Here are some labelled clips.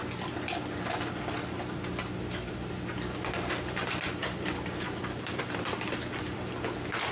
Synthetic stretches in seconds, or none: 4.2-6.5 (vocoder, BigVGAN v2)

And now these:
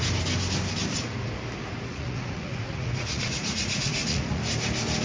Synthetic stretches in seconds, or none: 1.9-4.4 (vocoder, Vocos)

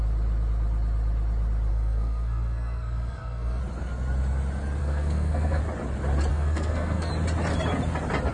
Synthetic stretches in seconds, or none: 1.7-3.6 (codec, SNAC); 4.8-5.6; 6.3-7.1

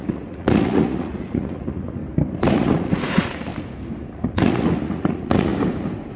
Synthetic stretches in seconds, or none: 0.0-2.0 (vocoder, Vocos); 2.5-3.5; 4.0-5.5

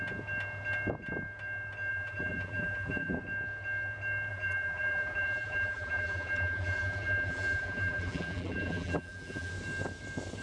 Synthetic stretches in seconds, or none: 1.9-3.2 (vocoder, BigVGAN v2); 4.3-9.5

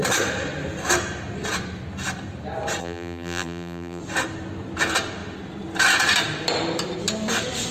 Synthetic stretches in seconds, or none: 2.8-4.0 (vocoder, BigVGAN v2)